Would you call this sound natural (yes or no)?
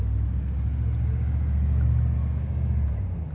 yes